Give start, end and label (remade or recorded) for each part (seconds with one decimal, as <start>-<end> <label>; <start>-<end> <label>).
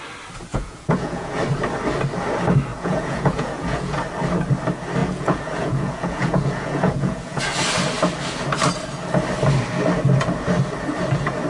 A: 0.0-0.5 recorded; 0.5-1.4 remade; 1.4-2.7 recorded; 2.7-4.0 remade; 4.0-5.0 recorded; 5.0-7.4 remade; 7.4-11.5 recorded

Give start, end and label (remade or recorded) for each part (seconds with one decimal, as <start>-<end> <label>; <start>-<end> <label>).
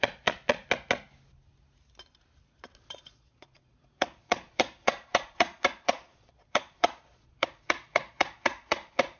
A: 0.0-0.6 remade; 0.6-2.8 recorded; 2.8-9.2 remade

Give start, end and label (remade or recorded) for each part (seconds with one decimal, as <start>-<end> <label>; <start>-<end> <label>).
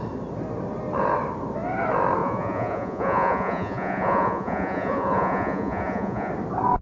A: 0.0-2.2 recorded; 2.2-6.3 remade; 6.3-6.8 recorded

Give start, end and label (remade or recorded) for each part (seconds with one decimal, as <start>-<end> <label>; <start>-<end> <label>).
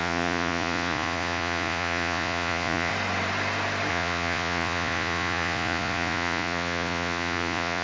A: 0.0-2.9 remade; 2.9-3.9 recorded; 3.9-7.8 remade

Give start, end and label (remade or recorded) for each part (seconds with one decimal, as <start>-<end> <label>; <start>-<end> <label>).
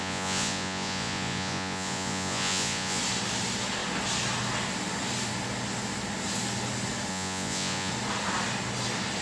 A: 0.0-3.0 remade; 3.0-7.1 recorded; 7.1-7.9 remade; 7.9-9.2 recorded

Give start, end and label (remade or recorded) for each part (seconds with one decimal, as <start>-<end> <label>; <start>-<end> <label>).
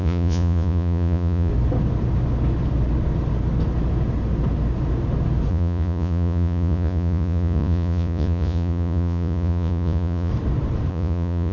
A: 0.0-1.5 remade; 1.5-5.5 recorded; 5.5-10.3 remade; 10.3-10.9 recorded; 10.9-11.5 remade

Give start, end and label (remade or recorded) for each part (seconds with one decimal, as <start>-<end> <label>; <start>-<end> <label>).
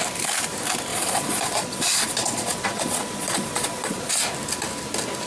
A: 0.0-0.9 recorded; 0.9-4.1 remade; 4.1-5.3 recorded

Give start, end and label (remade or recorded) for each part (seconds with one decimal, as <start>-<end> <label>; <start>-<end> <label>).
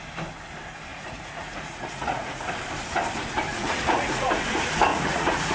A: 0.0-0.9 recorded; 0.9-2.5 remade; 2.5-3.5 recorded; 3.5-4.4 remade; 4.4-4.9 recorded; 4.9-5.5 remade